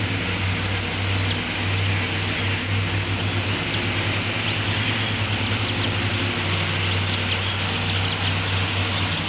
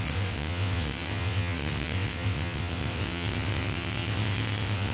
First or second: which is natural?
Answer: first